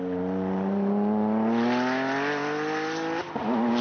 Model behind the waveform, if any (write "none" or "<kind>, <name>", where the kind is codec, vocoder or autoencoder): none